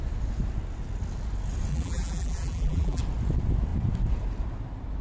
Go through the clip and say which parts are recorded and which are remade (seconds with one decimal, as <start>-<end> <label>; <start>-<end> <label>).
0.0-1.7 recorded; 1.7-3.0 remade; 3.0-5.0 recorded